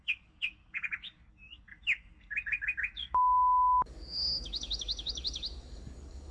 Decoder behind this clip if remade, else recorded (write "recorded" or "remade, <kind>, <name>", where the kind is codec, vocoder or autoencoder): remade, codec, DAC